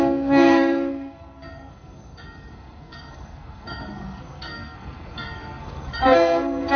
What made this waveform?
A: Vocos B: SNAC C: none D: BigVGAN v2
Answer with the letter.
B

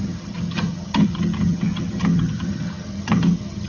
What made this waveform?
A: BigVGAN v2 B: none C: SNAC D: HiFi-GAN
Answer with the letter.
D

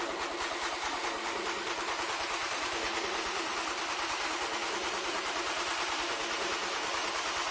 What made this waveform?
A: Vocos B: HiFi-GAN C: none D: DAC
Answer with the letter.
C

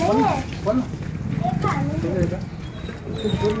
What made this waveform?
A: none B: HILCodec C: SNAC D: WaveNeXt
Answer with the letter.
A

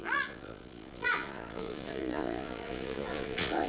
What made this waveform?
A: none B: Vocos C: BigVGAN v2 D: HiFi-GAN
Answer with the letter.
B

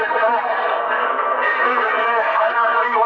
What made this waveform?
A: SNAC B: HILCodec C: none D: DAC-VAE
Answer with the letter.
A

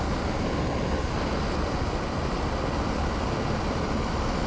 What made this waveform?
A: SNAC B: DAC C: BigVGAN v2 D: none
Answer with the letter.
D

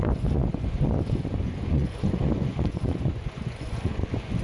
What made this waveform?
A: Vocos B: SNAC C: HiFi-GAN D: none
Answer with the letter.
A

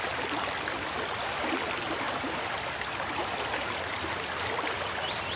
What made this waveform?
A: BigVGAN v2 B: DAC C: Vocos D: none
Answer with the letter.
D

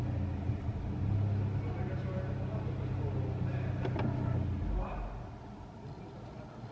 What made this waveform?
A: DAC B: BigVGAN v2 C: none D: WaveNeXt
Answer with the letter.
C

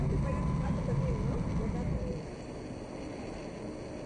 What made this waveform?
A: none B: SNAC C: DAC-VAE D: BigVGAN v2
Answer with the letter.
A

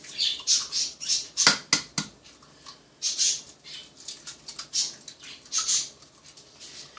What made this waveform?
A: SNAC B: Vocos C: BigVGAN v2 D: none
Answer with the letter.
D